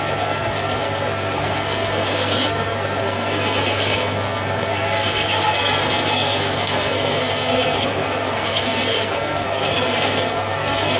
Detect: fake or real fake